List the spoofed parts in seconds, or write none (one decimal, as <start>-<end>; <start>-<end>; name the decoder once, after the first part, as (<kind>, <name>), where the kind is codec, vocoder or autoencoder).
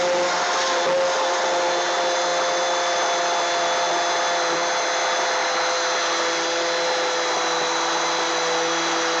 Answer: none